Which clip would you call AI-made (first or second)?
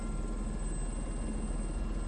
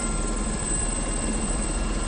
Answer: second